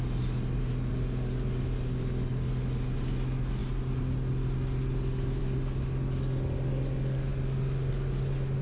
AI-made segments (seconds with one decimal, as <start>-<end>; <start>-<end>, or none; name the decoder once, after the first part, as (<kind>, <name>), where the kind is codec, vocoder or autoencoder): none

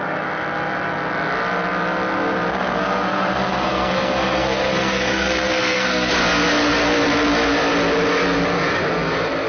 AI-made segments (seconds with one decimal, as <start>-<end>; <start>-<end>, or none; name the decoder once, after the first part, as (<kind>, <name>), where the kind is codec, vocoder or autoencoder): 2.5-6.1 (codec, SNAC)

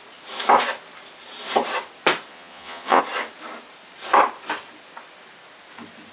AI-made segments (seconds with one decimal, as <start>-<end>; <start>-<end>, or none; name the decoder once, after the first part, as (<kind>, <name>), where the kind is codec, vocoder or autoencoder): 2.3-3.0 (vocoder, Vocos)

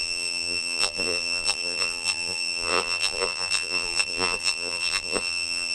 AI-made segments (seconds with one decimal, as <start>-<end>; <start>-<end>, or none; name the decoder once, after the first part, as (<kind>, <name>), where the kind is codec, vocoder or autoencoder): 0.0-5.7 (vocoder, BigVGAN v2)